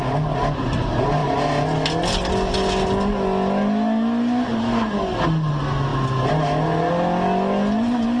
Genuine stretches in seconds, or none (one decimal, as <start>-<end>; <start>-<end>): 0.0-8.2